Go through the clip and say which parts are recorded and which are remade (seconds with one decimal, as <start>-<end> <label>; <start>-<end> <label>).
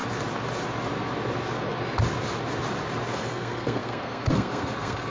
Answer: 0.0-3.1 recorded; 3.1-5.1 remade